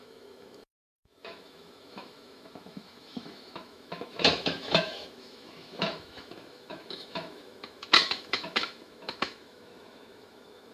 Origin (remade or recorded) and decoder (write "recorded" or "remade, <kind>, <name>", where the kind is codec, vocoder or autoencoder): remade, autoencoder, DAC-VAE